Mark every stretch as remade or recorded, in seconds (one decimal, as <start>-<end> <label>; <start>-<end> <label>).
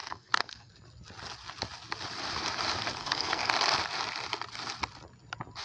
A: 0.0-0.7 remade; 0.7-3.0 recorded; 3.0-3.5 remade; 3.5-5.6 recorded